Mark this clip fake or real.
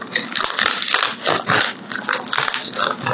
real